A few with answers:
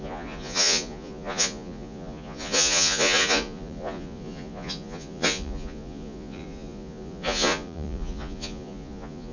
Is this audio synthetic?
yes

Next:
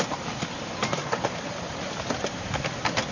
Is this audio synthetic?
no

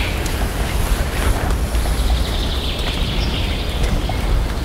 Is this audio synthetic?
no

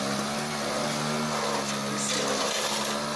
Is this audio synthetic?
no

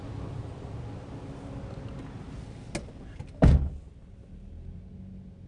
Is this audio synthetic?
no